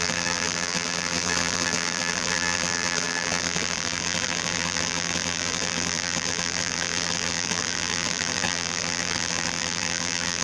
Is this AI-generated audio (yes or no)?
yes